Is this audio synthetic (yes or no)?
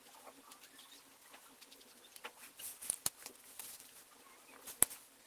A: no